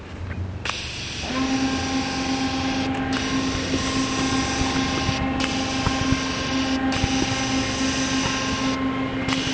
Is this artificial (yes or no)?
no